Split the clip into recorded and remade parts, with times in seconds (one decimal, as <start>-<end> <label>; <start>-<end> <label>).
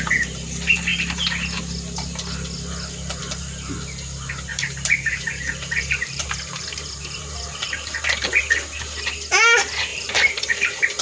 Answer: 0.0-4.5 recorded; 4.5-8.4 remade; 8.4-9.9 recorded; 9.9-11.0 remade